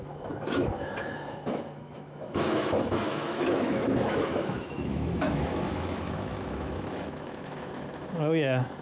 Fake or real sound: fake